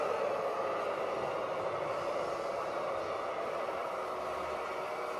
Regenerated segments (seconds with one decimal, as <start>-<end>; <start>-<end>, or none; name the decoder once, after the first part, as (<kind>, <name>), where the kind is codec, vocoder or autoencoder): none